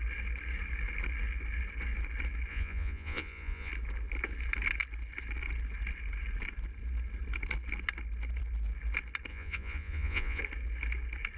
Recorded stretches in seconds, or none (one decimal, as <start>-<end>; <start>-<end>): 0.0-2.5; 3.7-9.3; 10.4-11.4